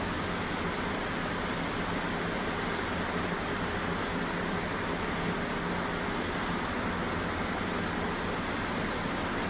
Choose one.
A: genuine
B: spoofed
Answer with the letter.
A